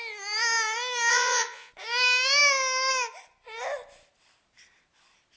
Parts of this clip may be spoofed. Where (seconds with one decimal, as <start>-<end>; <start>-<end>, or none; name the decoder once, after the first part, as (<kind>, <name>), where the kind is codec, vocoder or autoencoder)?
1.1-1.7 (vocoder, Vocos)